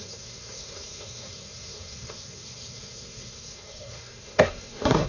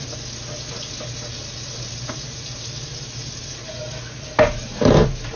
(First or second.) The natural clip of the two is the second